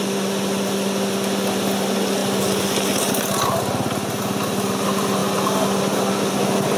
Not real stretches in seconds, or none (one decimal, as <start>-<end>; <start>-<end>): none